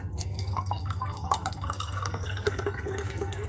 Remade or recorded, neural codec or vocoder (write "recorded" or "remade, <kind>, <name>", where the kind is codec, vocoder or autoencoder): remade, codec, SNAC